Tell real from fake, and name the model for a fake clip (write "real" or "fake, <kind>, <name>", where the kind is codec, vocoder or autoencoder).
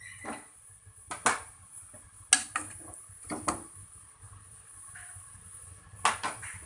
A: real